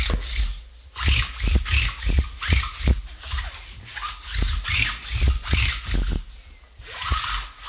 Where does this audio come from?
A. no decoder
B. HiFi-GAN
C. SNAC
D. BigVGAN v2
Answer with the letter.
A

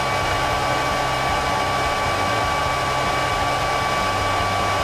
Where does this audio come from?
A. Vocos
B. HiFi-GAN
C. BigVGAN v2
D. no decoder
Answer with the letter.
D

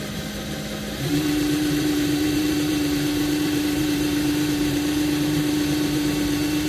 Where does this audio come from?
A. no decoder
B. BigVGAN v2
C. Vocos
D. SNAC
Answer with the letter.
B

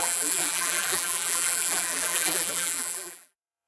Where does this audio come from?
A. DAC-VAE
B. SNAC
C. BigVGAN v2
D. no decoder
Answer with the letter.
C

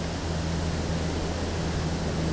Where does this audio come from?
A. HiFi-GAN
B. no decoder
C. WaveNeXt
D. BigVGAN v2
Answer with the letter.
B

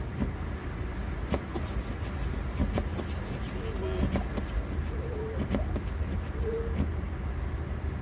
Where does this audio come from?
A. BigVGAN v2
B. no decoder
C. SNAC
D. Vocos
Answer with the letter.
B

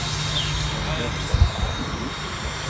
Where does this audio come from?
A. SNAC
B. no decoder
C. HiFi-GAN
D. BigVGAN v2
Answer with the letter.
B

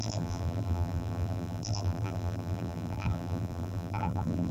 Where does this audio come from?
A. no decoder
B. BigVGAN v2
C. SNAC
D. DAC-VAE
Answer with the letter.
B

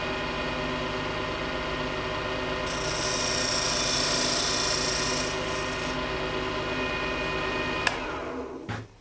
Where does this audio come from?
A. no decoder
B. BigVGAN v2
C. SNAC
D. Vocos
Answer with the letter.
A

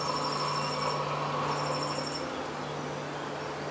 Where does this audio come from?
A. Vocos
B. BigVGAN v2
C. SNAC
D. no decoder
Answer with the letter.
D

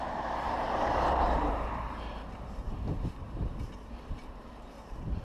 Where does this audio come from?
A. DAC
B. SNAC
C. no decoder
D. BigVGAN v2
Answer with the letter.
D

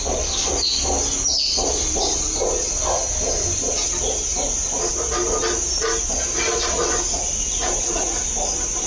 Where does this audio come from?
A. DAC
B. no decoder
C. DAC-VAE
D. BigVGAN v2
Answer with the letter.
B